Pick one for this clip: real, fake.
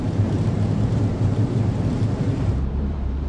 fake